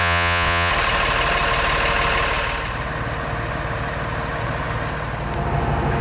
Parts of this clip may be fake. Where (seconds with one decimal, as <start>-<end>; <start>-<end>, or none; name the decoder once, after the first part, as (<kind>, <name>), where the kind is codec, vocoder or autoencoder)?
0.0-0.7 (vocoder, Vocos)